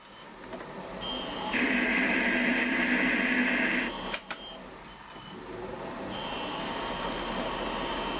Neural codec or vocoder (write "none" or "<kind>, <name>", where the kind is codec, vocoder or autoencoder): none